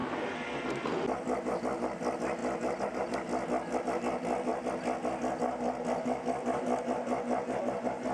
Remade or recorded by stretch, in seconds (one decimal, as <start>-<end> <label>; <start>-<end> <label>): 0.0-8.1 recorded